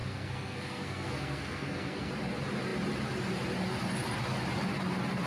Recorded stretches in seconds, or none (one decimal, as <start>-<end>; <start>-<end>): 2.1-5.3